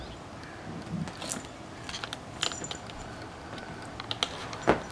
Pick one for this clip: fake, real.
real